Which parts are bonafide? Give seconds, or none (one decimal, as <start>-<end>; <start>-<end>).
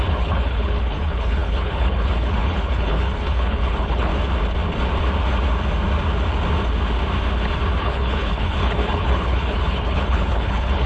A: 4.1-7.8